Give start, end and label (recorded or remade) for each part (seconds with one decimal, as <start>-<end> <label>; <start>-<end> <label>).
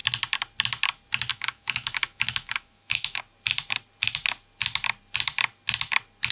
0.0-1.3 recorded; 1.3-3.2 remade; 3.2-6.3 recorded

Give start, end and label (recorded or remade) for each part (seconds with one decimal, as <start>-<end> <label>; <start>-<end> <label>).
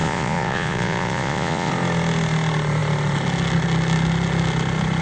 0.0-1.7 remade; 1.7-5.0 recorded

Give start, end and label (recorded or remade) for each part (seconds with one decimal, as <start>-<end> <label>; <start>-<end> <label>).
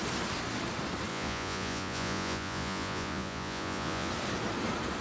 0.0-1.1 recorded; 1.1-4.1 remade; 4.1-5.0 recorded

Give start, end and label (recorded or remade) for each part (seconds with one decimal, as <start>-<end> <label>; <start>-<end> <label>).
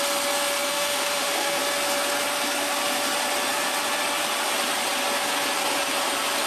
0.0-0.7 recorded; 0.7-1.6 remade; 1.6-6.5 recorded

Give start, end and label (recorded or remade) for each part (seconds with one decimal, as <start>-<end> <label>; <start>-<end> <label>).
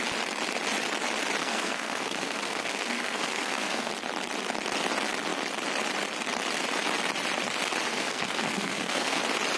0.0-1.4 recorded; 1.4-3.9 remade; 3.9-7.9 recorded; 7.9-9.2 remade; 9.2-9.6 recorded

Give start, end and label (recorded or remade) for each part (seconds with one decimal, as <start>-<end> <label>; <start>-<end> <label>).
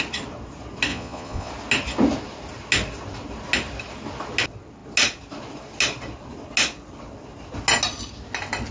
0.0-0.9 recorded; 0.9-1.5 remade; 1.5-8.7 recorded